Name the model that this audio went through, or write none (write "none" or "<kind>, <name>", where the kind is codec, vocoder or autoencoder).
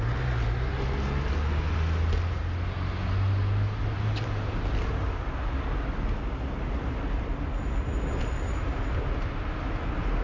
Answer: none